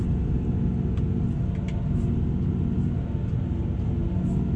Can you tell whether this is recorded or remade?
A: recorded